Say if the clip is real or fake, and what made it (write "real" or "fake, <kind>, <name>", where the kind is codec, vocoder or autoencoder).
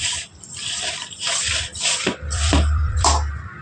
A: fake, vocoder, BigVGAN v2